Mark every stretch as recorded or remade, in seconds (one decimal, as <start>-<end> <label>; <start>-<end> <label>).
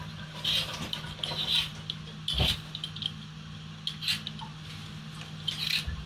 0.0-6.1 recorded